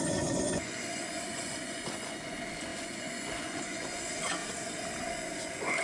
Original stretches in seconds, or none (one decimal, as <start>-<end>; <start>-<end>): 4.4-5.0